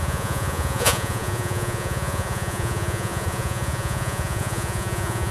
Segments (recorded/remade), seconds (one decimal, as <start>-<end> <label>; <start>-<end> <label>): 0.0-5.3 remade